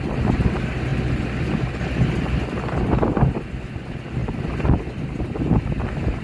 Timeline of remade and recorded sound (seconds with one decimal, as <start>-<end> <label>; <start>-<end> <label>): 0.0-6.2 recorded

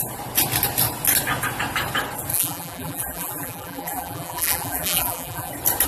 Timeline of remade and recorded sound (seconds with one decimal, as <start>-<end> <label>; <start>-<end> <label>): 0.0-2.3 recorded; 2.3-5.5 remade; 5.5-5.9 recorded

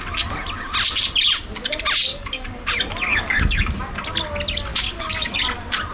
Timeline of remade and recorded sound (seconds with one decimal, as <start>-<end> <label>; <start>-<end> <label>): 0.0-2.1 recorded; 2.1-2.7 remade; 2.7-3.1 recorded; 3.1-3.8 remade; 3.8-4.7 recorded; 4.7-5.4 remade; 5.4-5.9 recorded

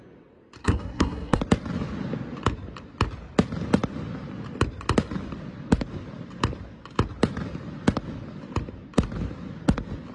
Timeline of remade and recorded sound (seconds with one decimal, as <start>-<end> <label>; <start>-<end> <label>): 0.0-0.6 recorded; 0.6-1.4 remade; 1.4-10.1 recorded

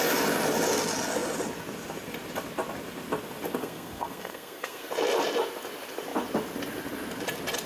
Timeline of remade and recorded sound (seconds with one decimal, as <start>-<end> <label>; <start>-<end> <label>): 0.0-3.6 recorded; 3.6-4.9 remade; 4.9-7.7 recorded

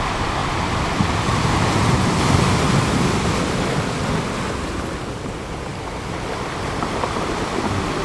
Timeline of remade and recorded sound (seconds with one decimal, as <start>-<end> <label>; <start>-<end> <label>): 0.0-8.0 recorded

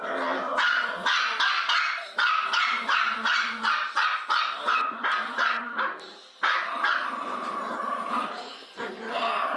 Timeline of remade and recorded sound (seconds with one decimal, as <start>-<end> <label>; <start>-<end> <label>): 0.0-3.0 recorded; 3.0-3.6 remade; 3.6-5.1 recorded; 5.1-5.6 remade; 5.6-7.0 recorded; 7.0-8.9 remade; 8.9-9.6 recorded